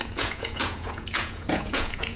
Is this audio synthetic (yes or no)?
yes